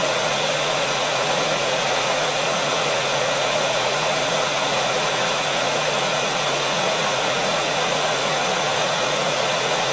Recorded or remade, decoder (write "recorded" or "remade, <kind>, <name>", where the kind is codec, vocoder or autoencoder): remade, vocoder, Vocos